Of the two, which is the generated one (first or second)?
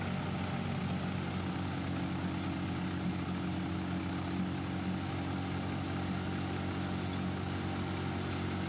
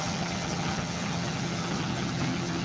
second